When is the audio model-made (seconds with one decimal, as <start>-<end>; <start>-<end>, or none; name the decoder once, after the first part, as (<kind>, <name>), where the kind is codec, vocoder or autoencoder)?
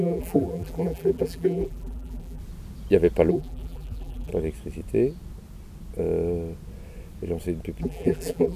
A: 0.0-2.4 (vocoder, BigVGAN v2); 3.3-4.3; 7.8-8.6